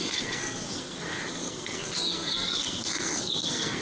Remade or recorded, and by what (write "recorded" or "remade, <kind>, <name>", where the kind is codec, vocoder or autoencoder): remade, codec, SNAC